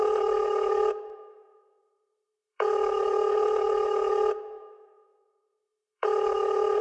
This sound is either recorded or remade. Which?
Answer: remade